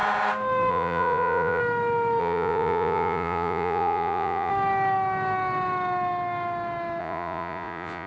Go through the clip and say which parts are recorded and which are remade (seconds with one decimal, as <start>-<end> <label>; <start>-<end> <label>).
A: 0.0-0.7 recorded; 0.7-1.6 remade; 1.6-2.2 recorded; 2.2-4.5 remade; 4.5-7.0 recorded; 7.0-8.1 remade